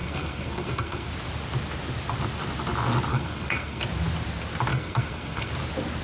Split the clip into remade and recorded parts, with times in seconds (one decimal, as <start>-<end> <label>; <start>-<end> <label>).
0.0-1.1 remade; 1.1-3.1 recorded; 3.1-3.8 remade; 3.8-4.7 recorded; 4.7-5.5 remade; 5.5-6.0 recorded